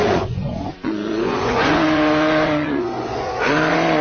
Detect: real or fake fake